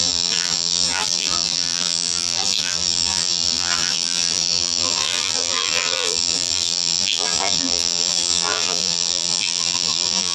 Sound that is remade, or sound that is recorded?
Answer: remade